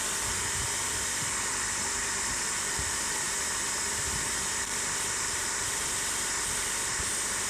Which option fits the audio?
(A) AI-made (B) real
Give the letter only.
A